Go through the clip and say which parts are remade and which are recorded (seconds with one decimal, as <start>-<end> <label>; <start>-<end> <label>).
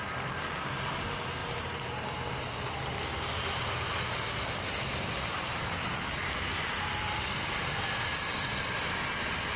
0.0-9.6 recorded